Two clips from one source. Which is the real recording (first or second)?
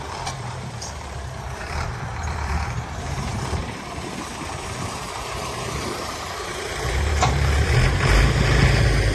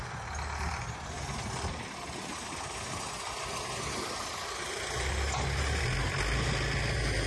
second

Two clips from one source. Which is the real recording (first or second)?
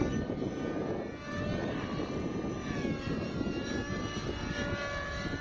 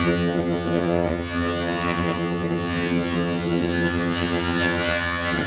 first